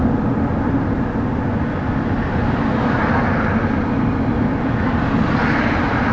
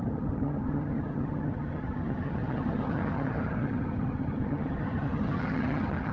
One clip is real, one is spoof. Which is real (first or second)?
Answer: first